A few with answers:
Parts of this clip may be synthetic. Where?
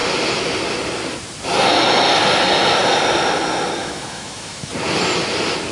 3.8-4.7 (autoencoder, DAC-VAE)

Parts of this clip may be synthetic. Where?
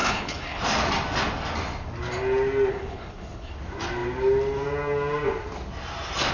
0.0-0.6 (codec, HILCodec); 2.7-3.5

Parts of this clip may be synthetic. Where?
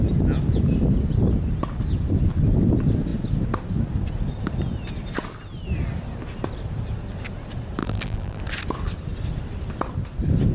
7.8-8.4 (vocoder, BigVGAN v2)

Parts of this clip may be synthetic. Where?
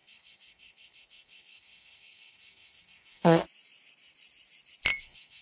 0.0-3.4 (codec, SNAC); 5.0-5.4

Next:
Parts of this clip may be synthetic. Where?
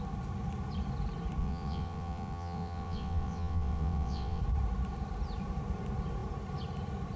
1.4-4.4 (vocoder, WaveNeXt)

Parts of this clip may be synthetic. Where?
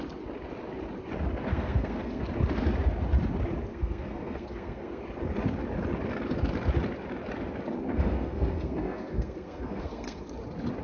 1.5-2.2 (codec, SNAC); 3.7-5.0; 7.9-10.2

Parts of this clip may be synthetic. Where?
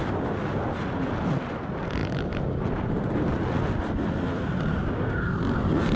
4.8-5.3 (codec, DAC)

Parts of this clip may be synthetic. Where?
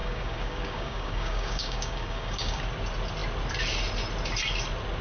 0.0-2.6 (codec, DAC)